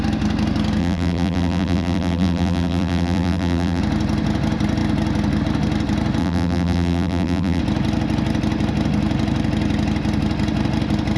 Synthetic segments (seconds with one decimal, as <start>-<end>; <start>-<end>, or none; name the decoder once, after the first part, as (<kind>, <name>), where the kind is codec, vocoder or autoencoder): 0.8-3.8 (vocoder, BigVGAN v2); 6.2-7.6